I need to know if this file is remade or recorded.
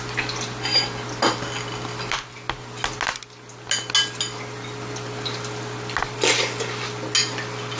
recorded